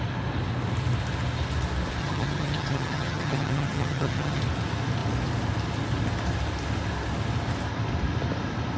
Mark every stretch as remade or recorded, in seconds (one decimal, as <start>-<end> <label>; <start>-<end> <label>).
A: 0.0-2.0 recorded; 2.0-4.4 remade; 4.4-8.8 recorded